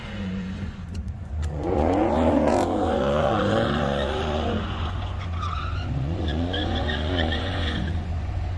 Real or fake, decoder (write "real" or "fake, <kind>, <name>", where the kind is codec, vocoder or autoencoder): fake, vocoder, Vocos